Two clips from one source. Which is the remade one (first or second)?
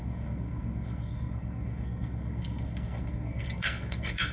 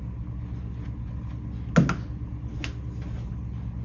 first